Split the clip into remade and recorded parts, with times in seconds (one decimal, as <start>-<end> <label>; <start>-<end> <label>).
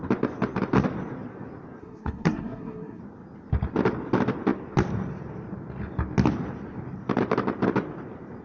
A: 0.0-1.8 recorded; 1.8-3.0 remade; 3.0-8.4 recorded